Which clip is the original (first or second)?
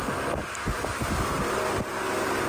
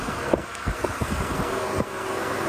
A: first